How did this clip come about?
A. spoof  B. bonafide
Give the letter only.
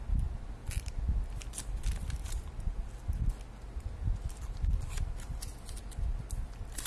B